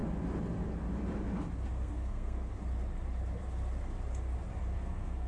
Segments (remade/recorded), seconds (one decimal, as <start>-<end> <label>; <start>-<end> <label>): 0.0-1.7 recorded; 1.7-2.5 remade; 2.5-4.6 recorded; 4.6-5.3 remade